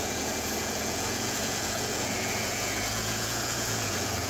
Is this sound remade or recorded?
remade